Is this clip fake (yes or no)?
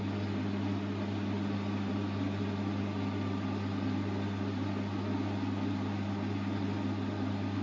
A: no